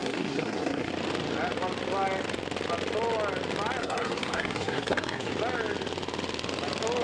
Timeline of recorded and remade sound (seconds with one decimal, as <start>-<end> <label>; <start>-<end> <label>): 0.0-0.9 remade; 0.9-3.8 recorded; 3.8-5.3 remade; 5.3-7.0 recorded